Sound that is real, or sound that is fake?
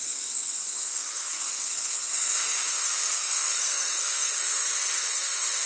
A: fake